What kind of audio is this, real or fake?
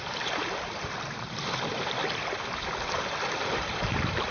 fake